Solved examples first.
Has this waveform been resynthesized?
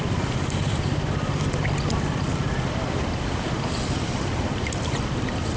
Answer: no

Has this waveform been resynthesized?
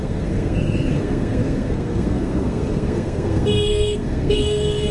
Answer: yes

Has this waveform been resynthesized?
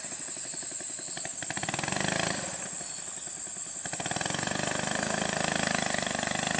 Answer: no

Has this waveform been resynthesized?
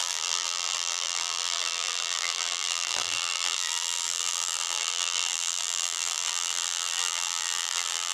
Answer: yes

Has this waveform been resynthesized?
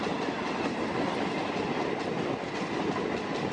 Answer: no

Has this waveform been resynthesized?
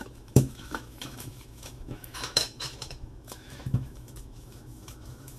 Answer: yes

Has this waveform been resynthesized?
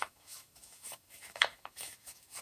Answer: yes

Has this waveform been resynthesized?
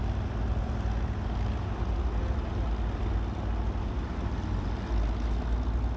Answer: no